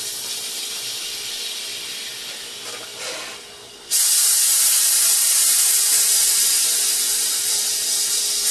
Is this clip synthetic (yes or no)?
no